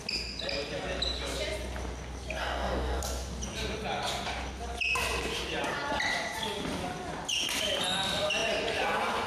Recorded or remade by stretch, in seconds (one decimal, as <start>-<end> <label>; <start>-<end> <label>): 0.0-2.4 recorded; 2.4-3.0 remade; 3.0-9.3 recorded